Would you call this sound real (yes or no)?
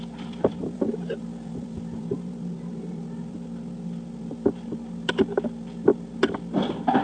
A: no